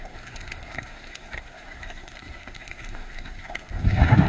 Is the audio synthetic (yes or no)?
yes